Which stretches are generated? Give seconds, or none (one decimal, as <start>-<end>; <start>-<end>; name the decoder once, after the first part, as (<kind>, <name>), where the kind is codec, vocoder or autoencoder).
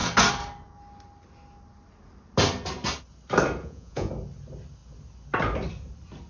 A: 3.6-4.1 (vocoder, Vocos)